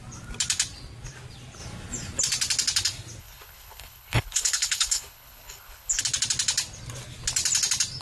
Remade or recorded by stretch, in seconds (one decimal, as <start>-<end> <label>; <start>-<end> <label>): 0.0-3.2 recorded; 3.2-6.0 remade; 6.0-8.0 recorded